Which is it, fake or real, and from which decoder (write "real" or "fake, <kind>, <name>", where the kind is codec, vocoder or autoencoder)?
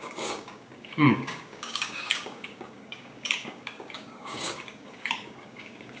fake, codec, DAC